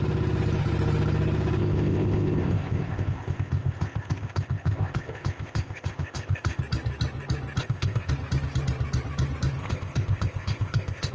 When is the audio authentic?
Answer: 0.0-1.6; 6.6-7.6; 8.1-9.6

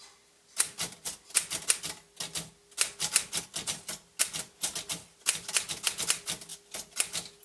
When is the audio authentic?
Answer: 0.0-7.4

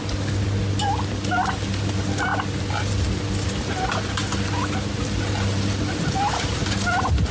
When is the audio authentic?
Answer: 0.0-7.3

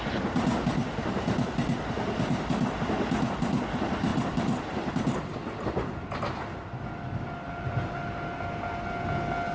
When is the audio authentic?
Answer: 0.0-9.5

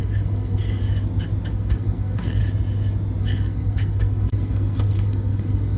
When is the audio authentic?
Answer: 0.8-1.5; 2.4-3.2

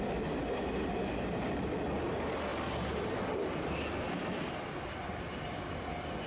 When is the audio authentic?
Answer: 0.0-6.3

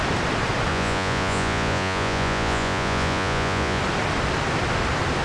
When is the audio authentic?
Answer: 0.0-0.7; 3.8-5.2